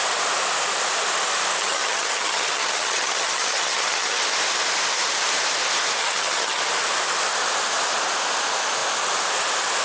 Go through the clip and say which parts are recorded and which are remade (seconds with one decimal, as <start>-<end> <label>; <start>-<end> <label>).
0.0-1.6 recorded; 1.6-4.2 remade; 4.2-6.0 recorded; 6.0-6.6 remade; 6.6-9.8 recorded